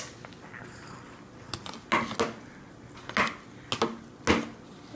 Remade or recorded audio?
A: recorded